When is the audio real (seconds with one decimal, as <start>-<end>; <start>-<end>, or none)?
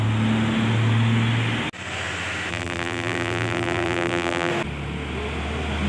0.0-2.5; 4.5-5.9